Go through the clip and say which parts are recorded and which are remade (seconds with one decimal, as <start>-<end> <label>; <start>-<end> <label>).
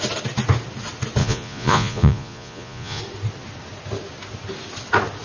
0.0-1.2 recorded; 1.2-3.0 remade; 3.0-5.2 recorded